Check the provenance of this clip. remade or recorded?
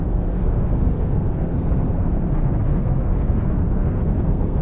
remade